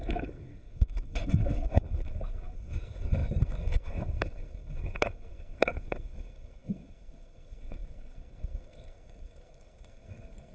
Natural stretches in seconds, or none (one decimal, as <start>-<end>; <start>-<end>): none